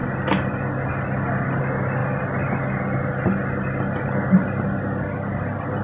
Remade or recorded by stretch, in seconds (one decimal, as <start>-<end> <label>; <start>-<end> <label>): 0.0-5.8 recorded

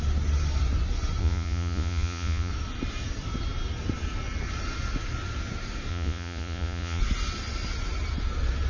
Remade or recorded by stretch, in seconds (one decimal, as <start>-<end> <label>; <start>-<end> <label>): 0.0-1.2 recorded; 1.2-2.5 remade; 2.5-5.9 recorded; 5.9-7.0 remade; 7.0-8.7 recorded

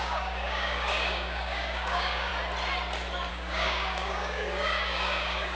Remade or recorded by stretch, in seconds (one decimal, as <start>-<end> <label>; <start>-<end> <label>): 0.0-2.3 remade; 2.3-3.3 recorded; 3.3-5.5 remade

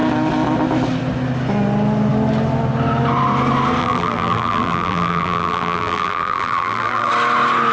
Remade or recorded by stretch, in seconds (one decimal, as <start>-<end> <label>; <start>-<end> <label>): 0.0-3.8 recorded; 3.8-7.1 remade; 7.1-7.7 recorded

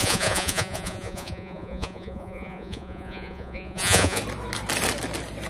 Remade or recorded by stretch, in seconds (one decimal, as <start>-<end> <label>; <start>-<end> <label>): 0.0-4.2 remade; 4.2-5.5 recorded

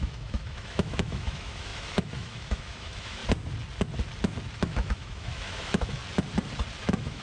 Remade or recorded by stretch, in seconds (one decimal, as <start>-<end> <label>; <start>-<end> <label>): 0.0-3.2 remade; 3.2-4.5 recorded; 4.5-6.0 remade; 6.0-6.8 recorded; 6.8-7.2 remade

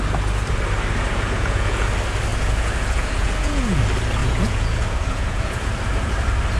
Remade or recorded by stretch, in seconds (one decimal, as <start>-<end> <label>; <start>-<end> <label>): 0.0-1.1 recorded; 1.1-1.9 remade; 1.9-2.3 recorded; 2.3-3.8 remade; 3.8-4.2 recorded; 4.2-5.7 remade; 5.7-6.6 recorded

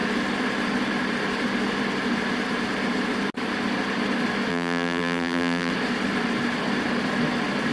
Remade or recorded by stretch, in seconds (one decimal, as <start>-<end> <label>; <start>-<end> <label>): 0.0-4.5 recorded; 4.5-5.7 remade; 5.7-7.7 recorded